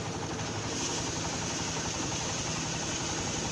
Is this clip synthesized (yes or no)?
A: no